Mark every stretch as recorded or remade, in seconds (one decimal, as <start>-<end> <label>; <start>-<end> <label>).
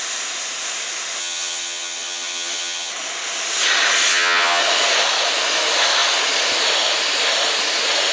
0.0-1.2 recorded; 1.2-2.9 remade; 2.9-4.1 recorded; 4.1-4.6 remade; 4.6-8.1 recorded